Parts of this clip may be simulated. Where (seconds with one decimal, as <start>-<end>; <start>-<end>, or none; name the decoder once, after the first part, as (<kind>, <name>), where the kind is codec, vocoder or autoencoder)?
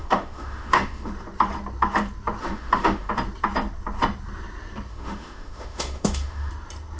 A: 0.0-1.1 (autoencoder, DAC-VAE); 2.4-3.1; 4.9-6.5